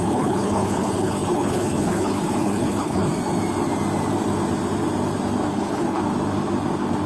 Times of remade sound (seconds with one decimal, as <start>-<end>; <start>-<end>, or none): 0.0-3.1; 5.5-6.0